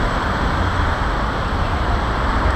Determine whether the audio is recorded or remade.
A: remade